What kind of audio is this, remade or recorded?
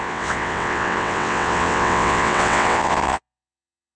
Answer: remade